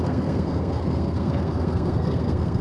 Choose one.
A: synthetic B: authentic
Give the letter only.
A